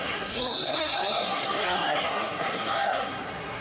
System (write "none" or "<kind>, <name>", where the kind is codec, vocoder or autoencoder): codec, SNAC